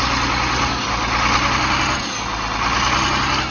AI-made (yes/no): no